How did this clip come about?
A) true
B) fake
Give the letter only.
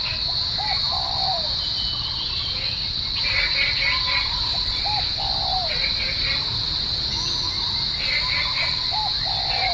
A